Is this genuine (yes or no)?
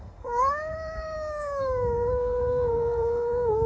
no